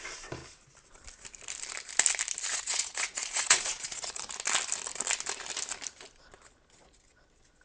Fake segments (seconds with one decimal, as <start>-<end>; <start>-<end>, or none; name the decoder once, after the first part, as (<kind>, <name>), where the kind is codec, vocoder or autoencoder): 2.5-4.2 (vocoder, Vocos)